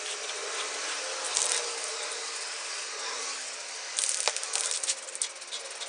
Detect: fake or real real